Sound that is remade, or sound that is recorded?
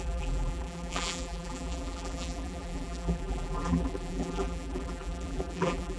remade